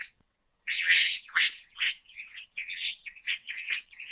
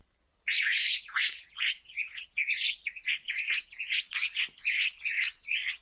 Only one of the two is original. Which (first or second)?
second